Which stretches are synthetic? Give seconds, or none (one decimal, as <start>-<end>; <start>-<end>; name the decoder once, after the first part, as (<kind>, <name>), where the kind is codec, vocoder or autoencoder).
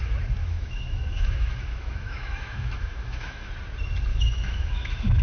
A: 0.4-3.5 (autoencoder, DAC-VAE); 4.1-5.2